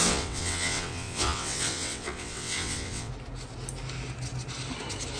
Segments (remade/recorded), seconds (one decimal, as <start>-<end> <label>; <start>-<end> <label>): 0.0-3.1 remade; 3.1-5.2 recorded